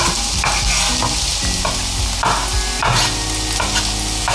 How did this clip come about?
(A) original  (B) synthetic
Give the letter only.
A